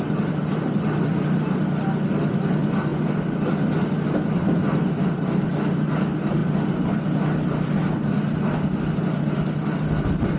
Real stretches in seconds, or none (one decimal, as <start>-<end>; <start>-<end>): 0.0-10.4